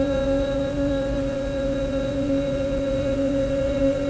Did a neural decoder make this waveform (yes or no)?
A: yes